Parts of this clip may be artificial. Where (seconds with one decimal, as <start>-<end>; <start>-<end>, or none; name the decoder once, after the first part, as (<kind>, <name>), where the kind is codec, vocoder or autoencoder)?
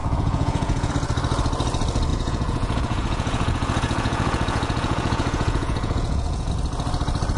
0.0-0.9 (vocoder, Vocos); 2.1-6.5